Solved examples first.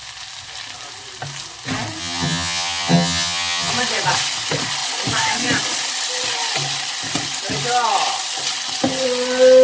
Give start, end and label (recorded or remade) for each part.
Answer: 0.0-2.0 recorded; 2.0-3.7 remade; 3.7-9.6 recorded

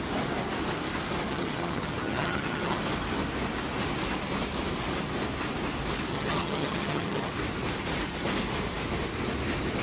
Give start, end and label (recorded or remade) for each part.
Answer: 0.0-1.3 recorded; 1.3-2.8 remade; 2.8-6.1 recorded; 6.1-7.3 remade; 7.3-9.8 recorded

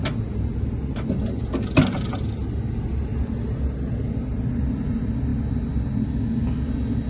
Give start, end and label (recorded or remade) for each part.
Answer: 0.0-7.1 recorded

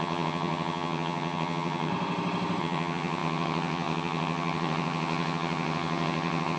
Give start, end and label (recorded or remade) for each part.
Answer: 0.0-1.9 remade; 1.9-2.6 recorded; 2.6-6.6 remade

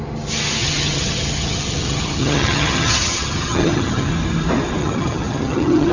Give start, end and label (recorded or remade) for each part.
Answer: 0.0-0.6 recorded; 0.6-4.1 remade; 4.1-4.8 recorded; 4.8-5.9 remade

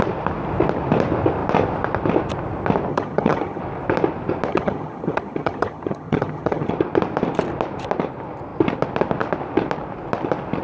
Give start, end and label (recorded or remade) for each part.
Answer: 0.0-2.9 recorded; 2.9-3.6 remade; 3.6-4.5 recorded; 4.5-6.7 remade; 6.7-10.6 recorded

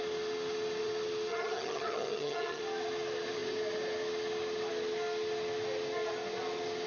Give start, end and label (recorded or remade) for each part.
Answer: 0.0-1.3 recorded; 1.3-2.6 remade; 2.6-6.9 recorded